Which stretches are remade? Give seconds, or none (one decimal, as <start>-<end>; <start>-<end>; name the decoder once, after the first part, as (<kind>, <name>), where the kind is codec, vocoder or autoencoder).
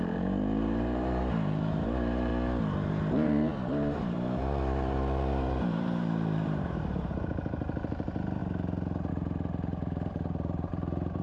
0.0-2.3 (vocoder, BigVGAN v2); 2.9-8.4; 9.1-11.2